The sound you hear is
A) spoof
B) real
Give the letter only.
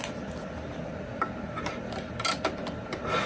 B